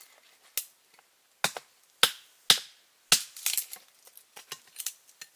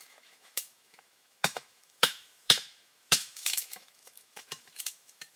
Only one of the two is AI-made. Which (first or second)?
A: second